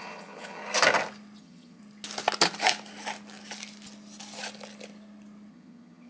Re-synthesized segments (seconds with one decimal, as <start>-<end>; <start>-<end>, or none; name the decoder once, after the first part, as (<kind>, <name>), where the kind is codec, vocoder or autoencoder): 0.0-0.6 (vocoder, HiFi-GAN); 1.4-1.8; 5.5-6.1